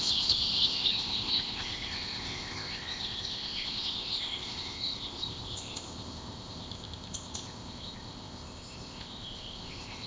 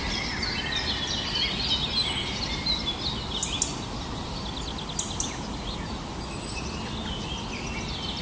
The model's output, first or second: first